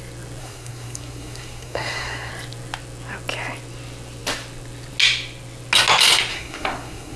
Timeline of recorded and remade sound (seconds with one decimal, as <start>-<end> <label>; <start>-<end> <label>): 0.0-0.4 recorded; 0.4-2.3 remade; 2.3-6.3 recorded; 6.3-7.2 remade